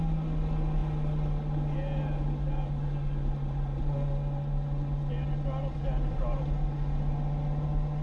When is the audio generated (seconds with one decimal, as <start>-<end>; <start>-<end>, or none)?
none